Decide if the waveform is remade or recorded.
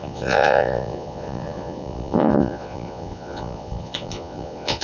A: remade